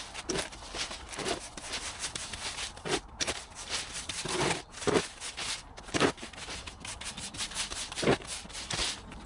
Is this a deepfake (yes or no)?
no